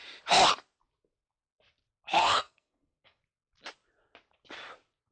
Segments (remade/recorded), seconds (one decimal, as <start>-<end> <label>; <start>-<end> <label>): 0.0-2.2 recorded; 2.2-3.2 remade; 3.2-5.1 recorded